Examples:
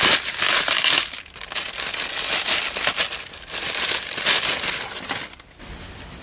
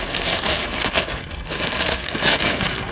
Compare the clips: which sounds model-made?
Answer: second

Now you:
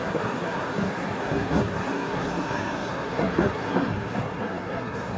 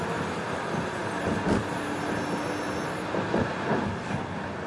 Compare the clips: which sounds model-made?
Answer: first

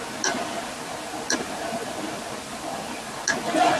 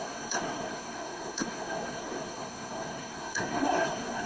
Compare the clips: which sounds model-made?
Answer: second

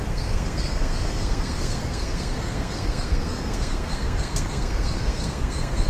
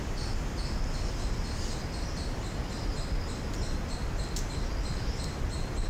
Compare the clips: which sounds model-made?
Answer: first